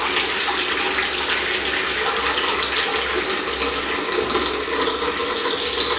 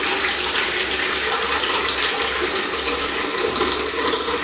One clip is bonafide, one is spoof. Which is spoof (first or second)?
second